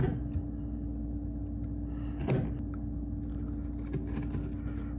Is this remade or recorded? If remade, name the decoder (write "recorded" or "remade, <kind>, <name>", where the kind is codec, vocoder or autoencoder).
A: recorded